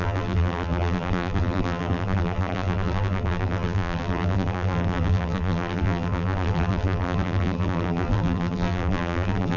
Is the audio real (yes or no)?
no